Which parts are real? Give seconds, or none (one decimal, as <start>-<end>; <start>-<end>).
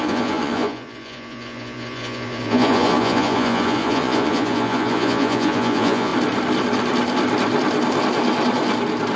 6.1-9.2